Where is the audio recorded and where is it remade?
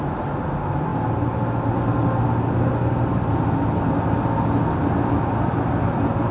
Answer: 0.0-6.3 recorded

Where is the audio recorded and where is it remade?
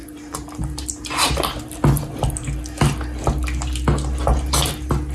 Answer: 0.0-2.6 remade; 2.6-5.1 recorded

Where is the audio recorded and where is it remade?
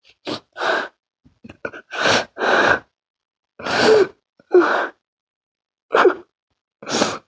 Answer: 0.0-7.3 recorded